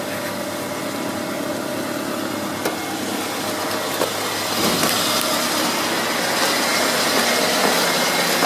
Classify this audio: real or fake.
real